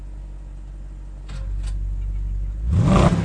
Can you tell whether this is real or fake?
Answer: real